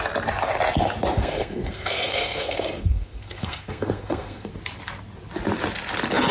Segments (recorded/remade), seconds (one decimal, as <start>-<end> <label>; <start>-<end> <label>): 0.0-1.2 recorded; 1.2-4.5 remade; 4.5-6.3 recorded